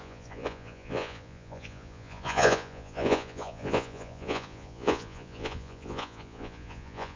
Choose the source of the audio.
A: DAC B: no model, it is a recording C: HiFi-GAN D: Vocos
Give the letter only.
D